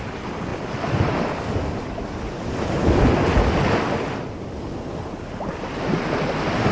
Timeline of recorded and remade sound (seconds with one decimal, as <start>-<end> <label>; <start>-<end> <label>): 0.0-6.7 recorded